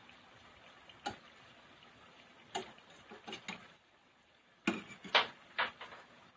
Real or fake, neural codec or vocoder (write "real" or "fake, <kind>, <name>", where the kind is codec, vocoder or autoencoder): real